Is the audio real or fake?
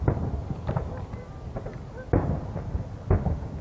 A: real